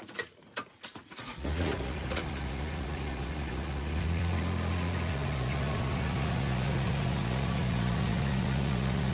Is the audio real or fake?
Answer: fake